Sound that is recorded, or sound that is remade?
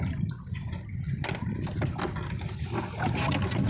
recorded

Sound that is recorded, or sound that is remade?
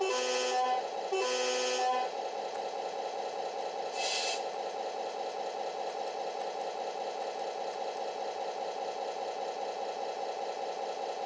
recorded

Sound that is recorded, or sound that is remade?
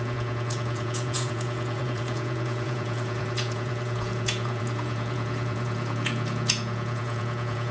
remade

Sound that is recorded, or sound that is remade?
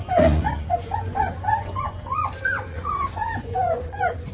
remade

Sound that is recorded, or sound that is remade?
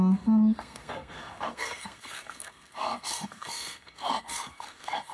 remade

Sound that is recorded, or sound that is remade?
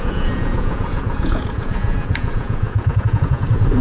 remade